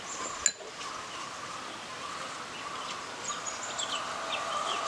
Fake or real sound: real